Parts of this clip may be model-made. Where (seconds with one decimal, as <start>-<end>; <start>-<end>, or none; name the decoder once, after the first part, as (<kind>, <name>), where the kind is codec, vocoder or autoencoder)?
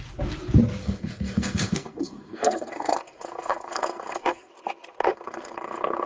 0.8-4.5 (codec, SNAC); 5.0-6.1